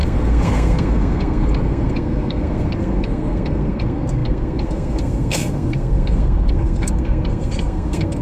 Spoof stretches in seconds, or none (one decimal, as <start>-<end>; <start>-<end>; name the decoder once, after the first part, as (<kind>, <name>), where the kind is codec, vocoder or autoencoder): 0.0-8.2 (codec, SNAC)